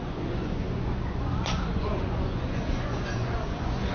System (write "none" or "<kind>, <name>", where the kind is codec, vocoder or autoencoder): vocoder, Vocos